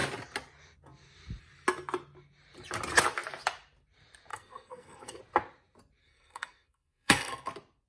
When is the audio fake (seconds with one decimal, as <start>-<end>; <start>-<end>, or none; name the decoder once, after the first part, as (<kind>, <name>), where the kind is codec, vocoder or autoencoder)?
4.3-5.2 (codec, SNAC); 6.0-7.5